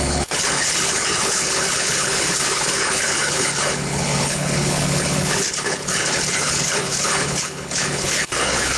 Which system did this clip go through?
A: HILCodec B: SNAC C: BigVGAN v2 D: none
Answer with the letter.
A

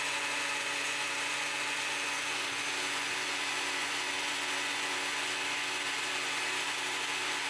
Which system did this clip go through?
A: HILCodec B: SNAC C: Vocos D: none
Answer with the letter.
C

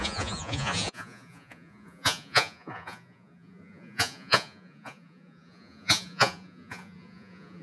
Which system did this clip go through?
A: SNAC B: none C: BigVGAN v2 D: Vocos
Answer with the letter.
D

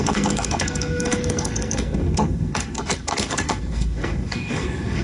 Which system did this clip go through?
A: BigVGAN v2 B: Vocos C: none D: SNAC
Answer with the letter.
D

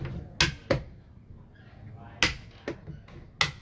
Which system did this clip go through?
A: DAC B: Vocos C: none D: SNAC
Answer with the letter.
C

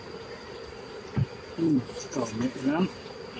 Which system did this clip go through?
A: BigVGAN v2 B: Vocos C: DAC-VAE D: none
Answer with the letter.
A